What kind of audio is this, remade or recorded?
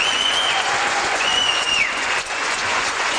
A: remade